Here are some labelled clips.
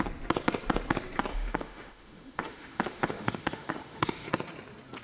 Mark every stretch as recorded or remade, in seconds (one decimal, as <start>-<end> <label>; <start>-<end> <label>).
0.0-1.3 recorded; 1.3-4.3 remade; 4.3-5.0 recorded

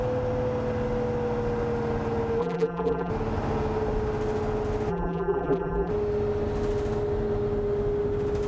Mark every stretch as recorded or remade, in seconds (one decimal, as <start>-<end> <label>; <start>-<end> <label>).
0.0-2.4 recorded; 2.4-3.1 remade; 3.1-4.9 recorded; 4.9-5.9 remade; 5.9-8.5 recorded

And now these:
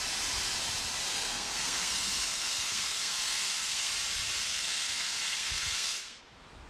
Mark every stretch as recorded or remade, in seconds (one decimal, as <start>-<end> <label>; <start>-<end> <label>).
0.0-1.1 recorded; 1.1-3.9 remade; 3.9-4.4 recorded; 4.4-6.2 remade; 6.2-6.7 recorded

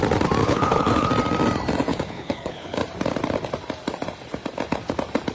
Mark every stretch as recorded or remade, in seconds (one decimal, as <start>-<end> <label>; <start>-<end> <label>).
0.0-0.4 recorded; 0.4-1.1 remade; 1.1-1.9 recorded; 1.9-2.8 remade; 2.8-5.3 recorded

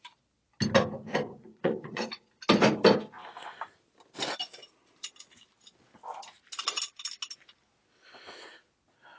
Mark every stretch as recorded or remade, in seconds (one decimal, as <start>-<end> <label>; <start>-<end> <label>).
0.0-1.3 recorded; 1.3-2.3 remade; 2.3-9.2 recorded

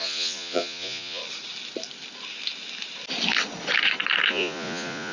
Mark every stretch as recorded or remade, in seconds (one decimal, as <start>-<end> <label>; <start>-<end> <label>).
0.0-1.2 remade; 1.2-4.3 recorded; 4.3-5.1 remade

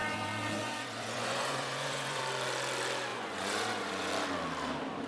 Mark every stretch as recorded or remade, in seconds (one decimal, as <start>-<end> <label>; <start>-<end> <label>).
0.0-2.2 remade; 2.2-3.1 recorded; 3.1-4.1 remade; 4.1-5.1 recorded